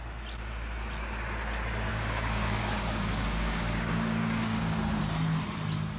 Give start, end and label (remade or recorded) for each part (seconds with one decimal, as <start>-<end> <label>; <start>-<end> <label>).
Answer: 0.0-1.9 recorded; 1.9-5.0 remade; 5.0-6.0 recorded